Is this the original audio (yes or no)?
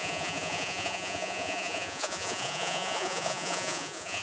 no